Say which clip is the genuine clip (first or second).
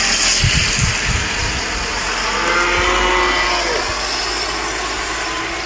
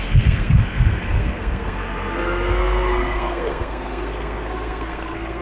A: first